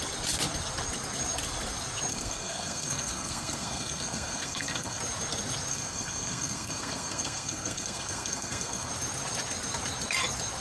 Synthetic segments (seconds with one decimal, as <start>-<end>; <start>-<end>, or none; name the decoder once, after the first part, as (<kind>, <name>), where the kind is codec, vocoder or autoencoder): 2.1-5.0 (codec, SNAC); 5.7-8.9